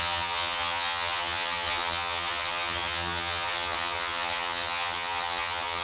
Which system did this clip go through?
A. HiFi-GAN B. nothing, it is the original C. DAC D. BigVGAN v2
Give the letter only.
A